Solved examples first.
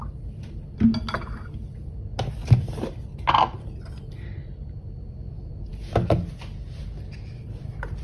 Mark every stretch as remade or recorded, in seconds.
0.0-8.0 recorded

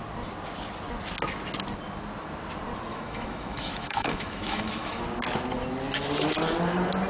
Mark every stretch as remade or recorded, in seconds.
0.0-2.9 recorded; 2.9-5.0 remade; 5.0-7.1 recorded

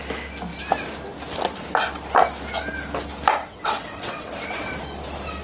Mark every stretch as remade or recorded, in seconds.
0.0-3.4 recorded; 3.4-4.7 remade; 4.7-5.4 recorded

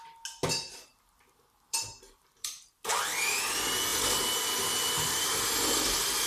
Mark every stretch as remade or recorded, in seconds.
0.0-0.9 recorded; 0.9-3.4 remade; 3.4-3.9 recorded; 3.9-5.2 remade; 5.2-6.3 recorded